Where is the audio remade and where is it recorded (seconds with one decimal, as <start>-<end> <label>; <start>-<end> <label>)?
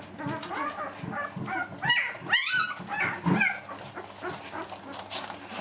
0.0-5.6 recorded